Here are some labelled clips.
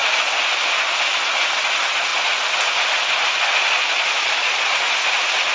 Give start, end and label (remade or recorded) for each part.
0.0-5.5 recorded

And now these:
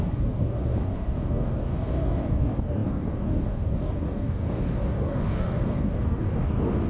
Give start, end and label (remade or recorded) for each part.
0.0-6.9 remade

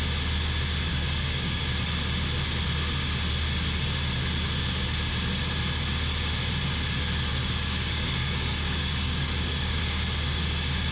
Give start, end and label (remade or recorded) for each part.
0.0-0.9 recorded; 0.9-1.6 remade; 1.6-7.3 recorded; 7.3-9.8 remade; 9.8-10.9 recorded

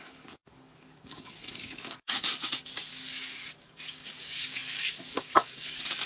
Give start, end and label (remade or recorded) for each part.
0.0-6.1 remade

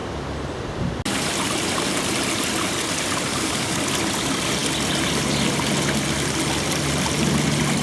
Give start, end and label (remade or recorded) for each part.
0.0-3.3 recorded; 3.3-3.8 remade; 3.8-7.8 recorded

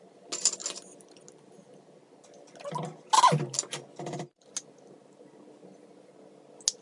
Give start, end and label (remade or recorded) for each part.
0.0-6.8 recorded

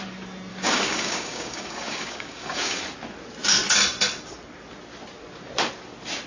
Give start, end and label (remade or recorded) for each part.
0.0-0.5 recorded; 0.5-2.8 remade; 2.8-6.3 recorded

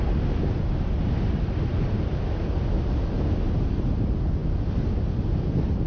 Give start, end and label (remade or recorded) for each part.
0.0-5.9 recorded